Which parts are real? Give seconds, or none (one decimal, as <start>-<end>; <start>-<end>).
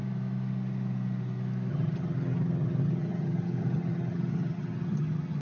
0.0-1.7